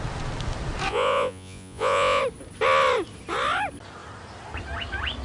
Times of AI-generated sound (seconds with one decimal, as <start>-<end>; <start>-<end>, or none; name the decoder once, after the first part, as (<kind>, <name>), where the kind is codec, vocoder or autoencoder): 0.9-2.2 (vocoder, Vocos)